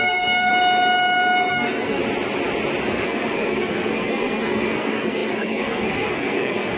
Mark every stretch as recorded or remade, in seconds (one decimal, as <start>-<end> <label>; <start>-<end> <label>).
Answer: 0.0-0.5 remade; 0.5-1.5 recorded; 1.5-2.0 remade; 2.0-2.9 recorded; 2.9-6.8 remade